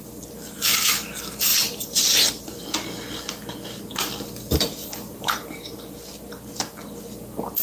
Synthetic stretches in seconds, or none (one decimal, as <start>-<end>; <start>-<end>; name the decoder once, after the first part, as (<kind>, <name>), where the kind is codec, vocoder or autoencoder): 1.5-2.6 (vocoder, BigVGAN v2); 5.1-6.1